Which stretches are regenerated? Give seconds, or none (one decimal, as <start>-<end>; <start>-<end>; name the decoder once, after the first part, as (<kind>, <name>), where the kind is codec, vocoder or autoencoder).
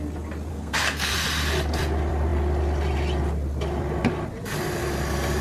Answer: 0.5-1.1 (codec, SNAC)